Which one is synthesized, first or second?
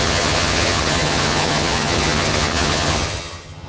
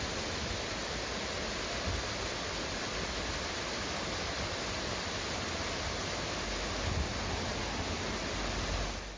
first